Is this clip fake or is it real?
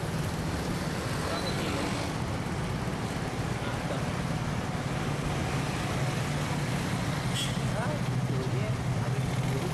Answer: real